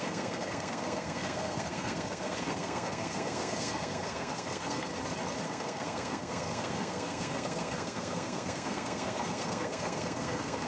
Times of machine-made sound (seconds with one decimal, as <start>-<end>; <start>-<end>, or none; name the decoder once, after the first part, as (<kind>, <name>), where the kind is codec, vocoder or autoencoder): 0.0-4.9 (codec, SNAC); 5.4-10.7